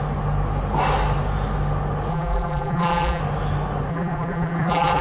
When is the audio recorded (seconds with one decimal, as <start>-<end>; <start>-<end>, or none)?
0.0-2.1; 3.2-3.9